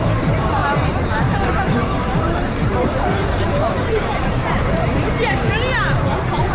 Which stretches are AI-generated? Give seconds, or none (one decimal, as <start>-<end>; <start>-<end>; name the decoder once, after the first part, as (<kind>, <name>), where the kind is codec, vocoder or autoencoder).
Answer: 0.0-0.6 (vocoder, BigVGAN v2); 1.1-6.5